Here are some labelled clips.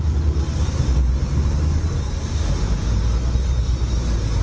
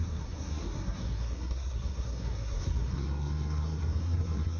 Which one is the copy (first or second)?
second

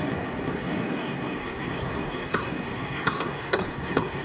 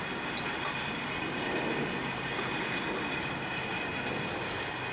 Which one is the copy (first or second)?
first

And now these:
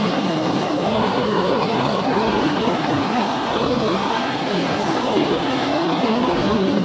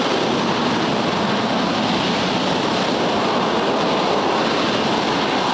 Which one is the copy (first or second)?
first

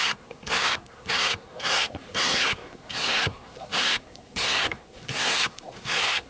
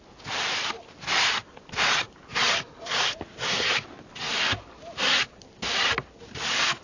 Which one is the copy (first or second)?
first